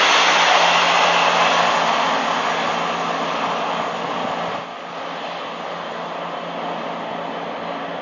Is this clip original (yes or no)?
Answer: yes